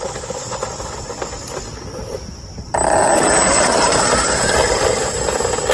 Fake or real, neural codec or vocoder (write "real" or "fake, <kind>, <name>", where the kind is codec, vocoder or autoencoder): real